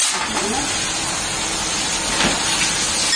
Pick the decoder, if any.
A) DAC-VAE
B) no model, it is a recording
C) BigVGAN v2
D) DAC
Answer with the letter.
B